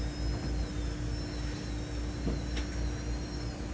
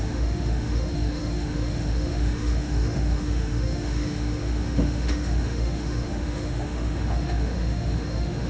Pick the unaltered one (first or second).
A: first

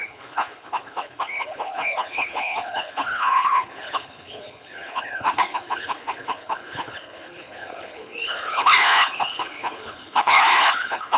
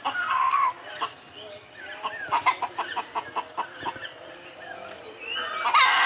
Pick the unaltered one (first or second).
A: second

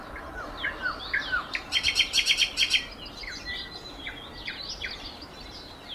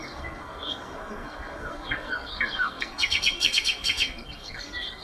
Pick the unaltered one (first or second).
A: first